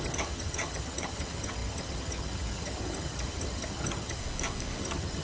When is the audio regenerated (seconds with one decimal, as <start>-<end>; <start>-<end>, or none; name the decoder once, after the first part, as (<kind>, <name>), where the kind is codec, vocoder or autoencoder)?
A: 0.0-4.2 (vocoder, HiFi-GAN); 4.8-5.2